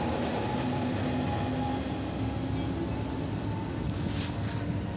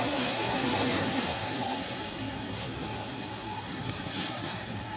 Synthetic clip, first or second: second